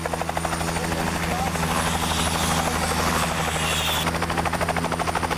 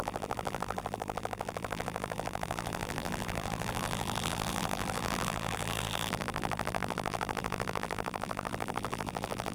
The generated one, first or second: second